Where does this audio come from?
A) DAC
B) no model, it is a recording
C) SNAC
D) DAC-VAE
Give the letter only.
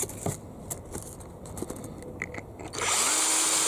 B